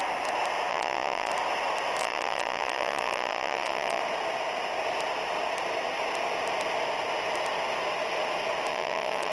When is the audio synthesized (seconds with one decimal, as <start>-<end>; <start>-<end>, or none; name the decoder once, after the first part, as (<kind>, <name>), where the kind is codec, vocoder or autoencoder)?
0.7-1.3 (vocoder, Vocos); 2.0-4.0; 8.7-9.3